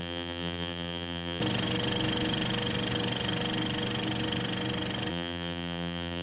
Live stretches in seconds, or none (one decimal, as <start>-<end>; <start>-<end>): 1.4-5.1